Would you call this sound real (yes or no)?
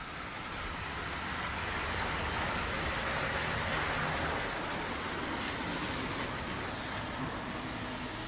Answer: yes